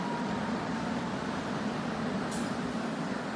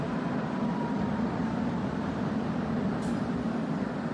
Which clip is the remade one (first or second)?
second